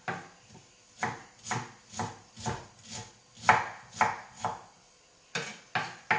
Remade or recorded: recorded